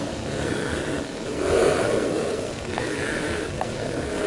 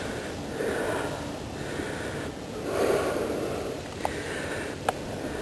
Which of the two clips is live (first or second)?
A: second